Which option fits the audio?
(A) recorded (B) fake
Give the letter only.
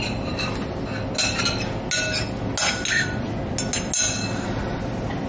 A